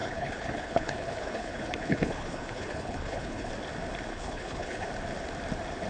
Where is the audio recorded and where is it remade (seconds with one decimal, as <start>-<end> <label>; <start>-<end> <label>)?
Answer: 0.0-3.5 remade; 3.5-4.1 recorded; 4.1-4.9 remade; 4.9-5.9 recorded